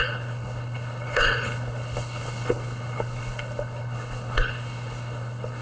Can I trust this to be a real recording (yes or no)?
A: no